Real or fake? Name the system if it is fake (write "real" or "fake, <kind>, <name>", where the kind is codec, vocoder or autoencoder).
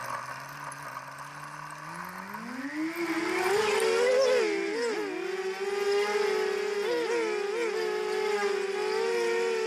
real